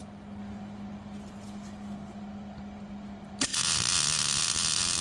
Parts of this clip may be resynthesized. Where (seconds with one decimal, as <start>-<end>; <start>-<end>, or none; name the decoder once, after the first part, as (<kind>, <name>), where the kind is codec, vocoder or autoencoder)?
none